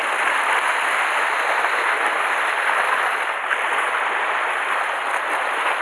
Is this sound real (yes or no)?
yes